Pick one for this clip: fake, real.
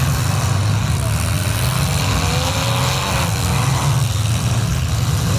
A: real